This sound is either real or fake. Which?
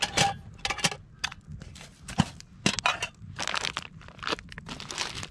real